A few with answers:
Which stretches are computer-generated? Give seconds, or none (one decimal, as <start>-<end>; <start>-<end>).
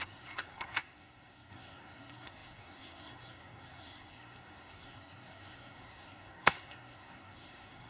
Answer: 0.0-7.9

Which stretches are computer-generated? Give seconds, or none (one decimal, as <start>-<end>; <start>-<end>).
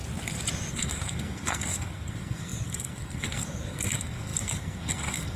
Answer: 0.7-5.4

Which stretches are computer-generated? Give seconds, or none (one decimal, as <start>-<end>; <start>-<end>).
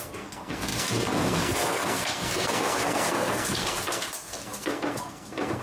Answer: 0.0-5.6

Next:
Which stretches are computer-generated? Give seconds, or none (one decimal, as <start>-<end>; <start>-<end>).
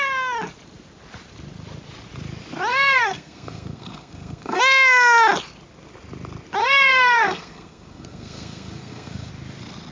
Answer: 2.7-4.6; 6.6-9.3